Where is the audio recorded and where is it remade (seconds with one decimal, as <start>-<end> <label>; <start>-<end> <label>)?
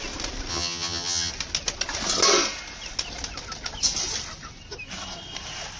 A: 0.0-0.5 recorded; 0.5-1.3 remade; 1.3-5.8 recorded